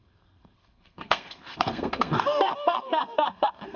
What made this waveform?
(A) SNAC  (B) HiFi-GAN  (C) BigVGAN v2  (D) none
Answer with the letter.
A